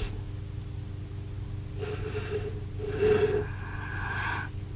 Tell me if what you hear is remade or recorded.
recorded